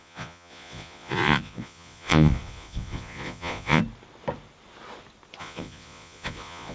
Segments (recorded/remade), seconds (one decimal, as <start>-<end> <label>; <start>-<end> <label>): 0.0-3.8 remade; 3.8-5.4 recorded; 5.4-6.7 remade